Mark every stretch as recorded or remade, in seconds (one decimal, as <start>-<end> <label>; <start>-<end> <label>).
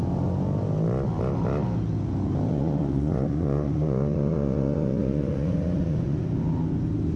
0.0-2.5 recorded; 2.5-6.2 remade; 6.2-7.2 recorded